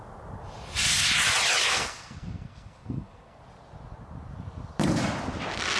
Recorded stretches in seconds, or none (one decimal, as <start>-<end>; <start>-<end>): 0.0-1.6; 3.4-5.8